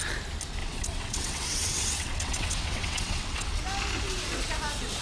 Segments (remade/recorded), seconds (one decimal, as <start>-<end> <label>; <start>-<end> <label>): 0.0-0.6 recorded; 0.6-3.6 remade; 3.6-5.0 recorded